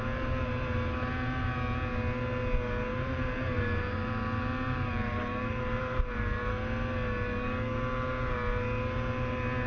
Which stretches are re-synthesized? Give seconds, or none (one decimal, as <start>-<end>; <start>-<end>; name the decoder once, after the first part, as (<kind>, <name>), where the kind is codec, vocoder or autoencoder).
2.9-6.5 (vocoder, BigVGAN v2)